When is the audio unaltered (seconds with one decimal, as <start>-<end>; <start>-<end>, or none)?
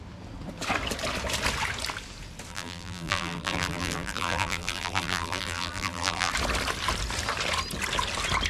0.0-2.5; 6.3-8.5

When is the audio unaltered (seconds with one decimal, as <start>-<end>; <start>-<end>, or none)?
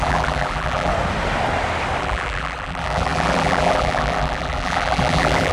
0.9-2.0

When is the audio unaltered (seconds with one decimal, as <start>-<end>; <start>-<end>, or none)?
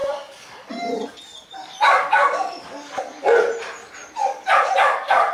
0.7-1.6; 3.4-4.2